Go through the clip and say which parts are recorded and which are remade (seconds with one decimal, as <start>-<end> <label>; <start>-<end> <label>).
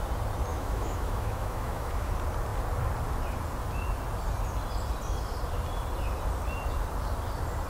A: 0.0-0.5 recorded; 0.5-2.1 remade; 2.1-7.7 recorded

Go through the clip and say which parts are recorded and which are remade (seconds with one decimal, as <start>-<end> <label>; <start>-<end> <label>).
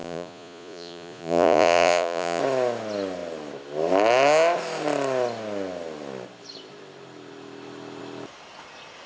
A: 0.0-2.4 remade; 2.4-9.1 recorded